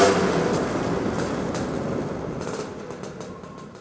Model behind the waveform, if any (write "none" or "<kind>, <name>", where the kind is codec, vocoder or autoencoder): vocoder, BigVGAN v2